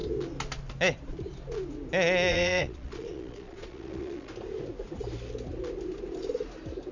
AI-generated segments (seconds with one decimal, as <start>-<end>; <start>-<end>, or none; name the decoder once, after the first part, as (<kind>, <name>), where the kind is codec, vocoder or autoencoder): 2.3-4.3 (vocoder, Vocos)